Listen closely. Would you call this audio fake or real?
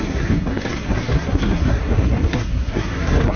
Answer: fake